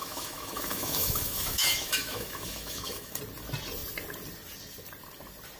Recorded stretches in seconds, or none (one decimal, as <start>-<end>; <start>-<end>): 3.2-5.6